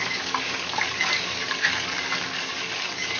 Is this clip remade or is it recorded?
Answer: remade